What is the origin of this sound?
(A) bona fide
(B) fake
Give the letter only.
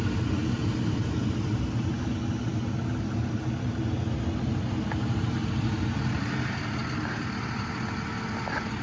A